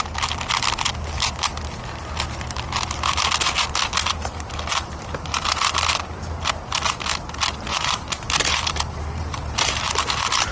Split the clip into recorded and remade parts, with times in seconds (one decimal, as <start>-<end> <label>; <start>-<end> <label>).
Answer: 0.0-7.7 recorded; 7.7-10.5 remade